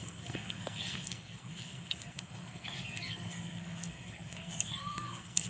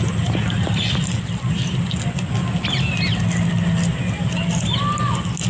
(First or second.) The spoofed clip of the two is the first